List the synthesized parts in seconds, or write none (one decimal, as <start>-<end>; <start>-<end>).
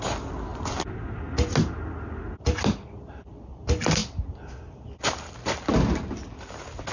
none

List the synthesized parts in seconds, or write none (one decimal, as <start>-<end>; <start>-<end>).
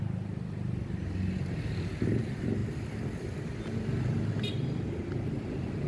none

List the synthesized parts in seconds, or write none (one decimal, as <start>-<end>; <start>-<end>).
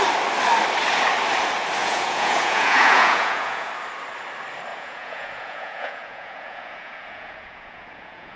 1.8-3.7; 4.7-8.4